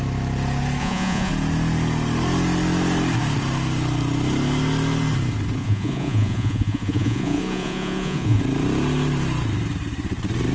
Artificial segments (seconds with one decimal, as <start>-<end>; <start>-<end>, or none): 0.8-1.3; 5.6-8.4